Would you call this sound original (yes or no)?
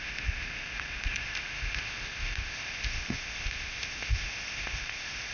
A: no